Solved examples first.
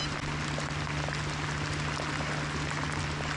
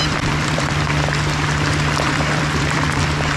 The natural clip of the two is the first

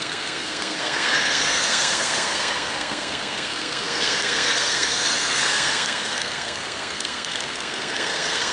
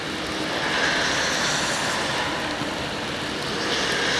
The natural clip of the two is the second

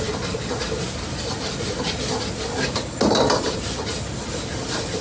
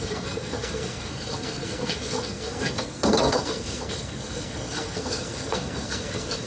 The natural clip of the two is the first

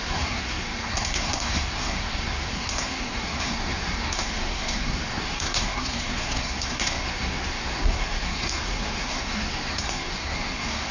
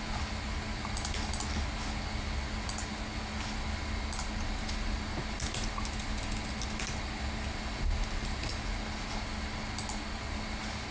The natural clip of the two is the second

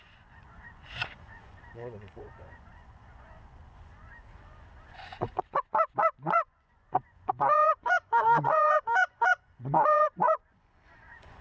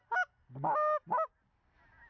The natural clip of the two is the second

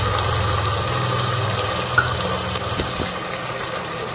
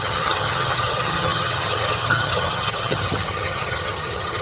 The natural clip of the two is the first